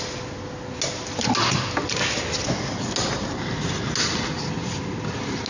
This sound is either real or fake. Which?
real